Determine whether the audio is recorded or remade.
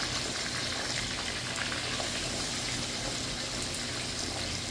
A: recorded